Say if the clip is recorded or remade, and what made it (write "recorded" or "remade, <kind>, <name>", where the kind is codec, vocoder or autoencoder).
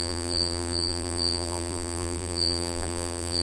remade, vocoder, BigVGAN v2